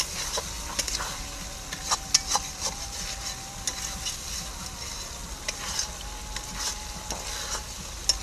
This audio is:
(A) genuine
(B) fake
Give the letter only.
A